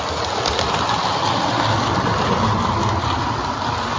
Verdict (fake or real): real